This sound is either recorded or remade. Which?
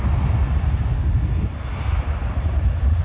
recorded